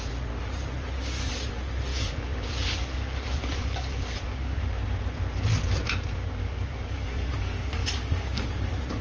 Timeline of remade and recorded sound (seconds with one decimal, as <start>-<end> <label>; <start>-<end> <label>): 0.0-1.9 recorded; 1.9-4.7 remade; 4.7-6.4 recorded; 6.4-8.5 remade; 8.5-9.0 recorded